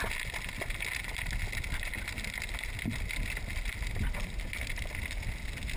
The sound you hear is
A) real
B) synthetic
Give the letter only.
A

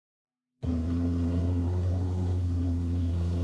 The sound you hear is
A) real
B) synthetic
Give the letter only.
B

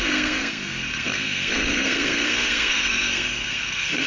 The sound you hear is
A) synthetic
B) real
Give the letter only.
A